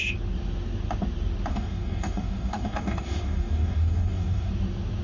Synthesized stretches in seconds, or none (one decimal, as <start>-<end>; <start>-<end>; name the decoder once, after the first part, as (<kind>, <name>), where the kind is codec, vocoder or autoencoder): 1.5-4.5 (codec, DAC)